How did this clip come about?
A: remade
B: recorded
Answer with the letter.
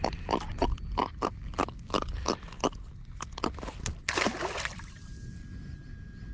B